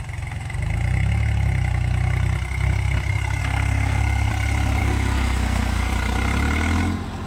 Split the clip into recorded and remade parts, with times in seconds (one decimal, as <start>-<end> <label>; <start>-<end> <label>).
0.0-3.4 recorded; 3.4-4.3 remade; 4.3-4.8 recorded; 4.8-5.9 remade; 5.9-7.3 recorded